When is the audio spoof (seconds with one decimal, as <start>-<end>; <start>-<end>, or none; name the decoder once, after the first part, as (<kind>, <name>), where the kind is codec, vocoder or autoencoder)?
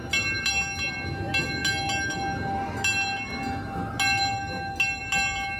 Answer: none